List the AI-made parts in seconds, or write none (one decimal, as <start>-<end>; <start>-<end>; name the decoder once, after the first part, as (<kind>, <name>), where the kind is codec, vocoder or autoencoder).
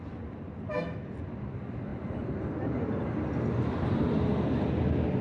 none